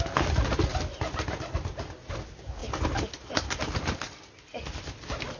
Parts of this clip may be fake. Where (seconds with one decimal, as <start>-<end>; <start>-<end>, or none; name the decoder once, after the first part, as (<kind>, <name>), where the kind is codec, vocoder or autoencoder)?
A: none